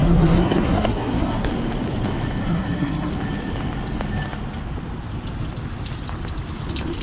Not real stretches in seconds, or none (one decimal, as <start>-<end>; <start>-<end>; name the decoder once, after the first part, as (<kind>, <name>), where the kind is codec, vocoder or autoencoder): 0.0-1.5 (codec, SNAC); 2.4-3.1